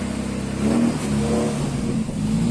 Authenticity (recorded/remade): recorded